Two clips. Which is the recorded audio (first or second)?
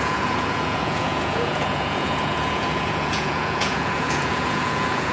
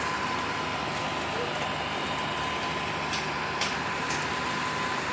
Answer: second